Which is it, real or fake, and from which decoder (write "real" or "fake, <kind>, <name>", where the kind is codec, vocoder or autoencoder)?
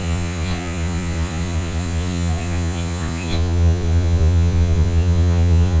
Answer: fake, vocoder, Vocos